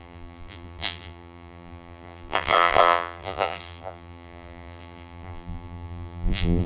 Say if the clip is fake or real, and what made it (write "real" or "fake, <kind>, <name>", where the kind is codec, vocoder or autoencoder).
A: fake, vocoder, BigVGAN v2